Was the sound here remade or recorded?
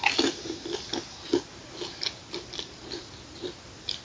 recorded